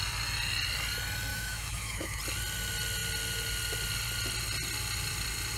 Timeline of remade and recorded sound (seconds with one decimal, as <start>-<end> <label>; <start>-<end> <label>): 0.0-1.3 recorded; 1.3-2.2 remade; 2.2-5.6 recorded